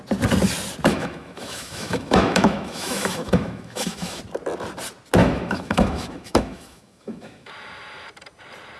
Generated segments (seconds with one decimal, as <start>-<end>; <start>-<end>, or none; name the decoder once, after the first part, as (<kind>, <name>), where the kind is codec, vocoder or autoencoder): 0.9-4.2 (autoencoder, DAC-VAE); 5.2-7.5